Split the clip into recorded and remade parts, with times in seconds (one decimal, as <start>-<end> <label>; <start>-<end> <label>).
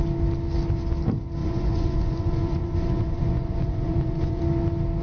0.0-1.4 recorded; 1.4-4.4 remade; 4.4-5.0 recorded